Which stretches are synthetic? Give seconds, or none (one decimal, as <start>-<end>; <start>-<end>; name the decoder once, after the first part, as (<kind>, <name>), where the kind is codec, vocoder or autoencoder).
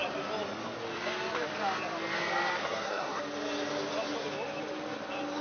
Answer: 2.6-3.2 (codec, SNAC)